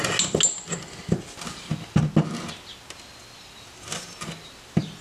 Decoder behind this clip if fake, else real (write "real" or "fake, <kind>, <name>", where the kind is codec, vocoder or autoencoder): real